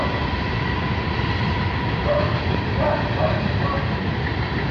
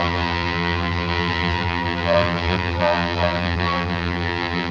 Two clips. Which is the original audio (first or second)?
first